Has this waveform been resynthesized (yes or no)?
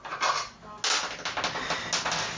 no